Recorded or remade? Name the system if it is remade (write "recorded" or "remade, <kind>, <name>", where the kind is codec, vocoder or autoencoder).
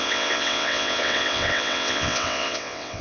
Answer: remade, vocoder, WaveNeXt